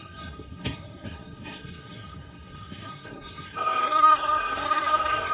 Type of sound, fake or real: fake